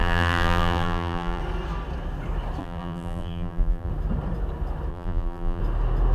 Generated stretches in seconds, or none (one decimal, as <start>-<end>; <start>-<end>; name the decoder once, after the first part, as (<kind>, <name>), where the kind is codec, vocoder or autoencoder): 0.0-1.4 (vocoder, BigVGAN v2); 2.6-3.9; 4.9-5.6